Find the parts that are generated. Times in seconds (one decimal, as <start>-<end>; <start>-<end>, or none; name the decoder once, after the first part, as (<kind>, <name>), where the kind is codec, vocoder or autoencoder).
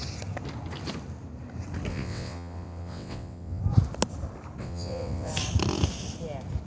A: 1.9-3.6 (vocoder, WaveNeXt); 4.6-5.3